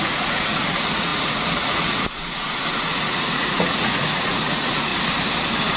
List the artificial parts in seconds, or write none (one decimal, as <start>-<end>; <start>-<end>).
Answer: 0.0-4.9